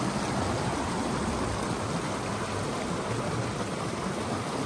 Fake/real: real